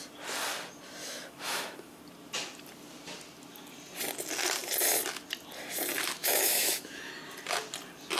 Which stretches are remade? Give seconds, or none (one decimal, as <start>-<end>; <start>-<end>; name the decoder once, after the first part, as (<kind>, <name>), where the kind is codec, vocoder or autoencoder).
1.0-2.0 (autoencoder, DAC-VAE); 6.2-7.1